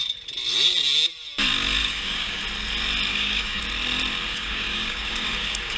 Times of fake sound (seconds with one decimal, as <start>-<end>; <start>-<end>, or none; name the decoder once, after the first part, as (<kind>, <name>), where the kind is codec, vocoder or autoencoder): 1.8-2.4 (codec, DAC); 3.1-3.6; 4.3-5.8